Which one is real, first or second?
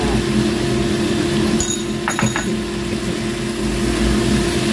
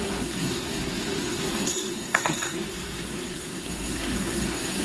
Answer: first